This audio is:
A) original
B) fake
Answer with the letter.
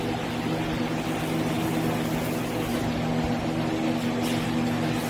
A